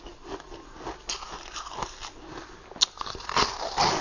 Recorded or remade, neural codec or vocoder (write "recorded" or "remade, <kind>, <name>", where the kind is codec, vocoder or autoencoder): recorded